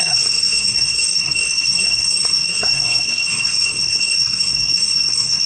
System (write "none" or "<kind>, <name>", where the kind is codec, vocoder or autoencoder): codec, SNAC